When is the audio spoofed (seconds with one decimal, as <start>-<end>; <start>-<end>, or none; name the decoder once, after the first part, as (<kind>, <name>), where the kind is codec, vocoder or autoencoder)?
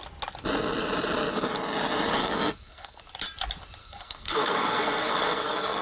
2.2-3.0 (codec, SNAC); 3.8-5.8